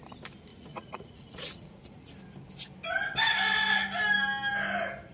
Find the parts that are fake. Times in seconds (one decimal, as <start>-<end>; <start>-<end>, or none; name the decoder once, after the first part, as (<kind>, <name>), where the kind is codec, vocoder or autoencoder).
0.5-2.1 (vocoder, Vocos)